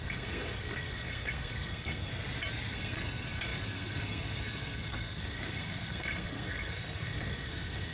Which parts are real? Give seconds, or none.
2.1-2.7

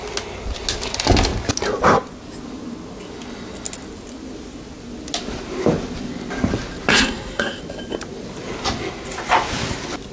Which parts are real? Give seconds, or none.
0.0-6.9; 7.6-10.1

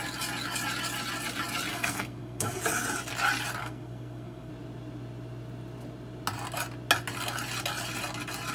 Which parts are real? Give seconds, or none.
0.0-1.7; 2.6-3.6; 4.5-8.5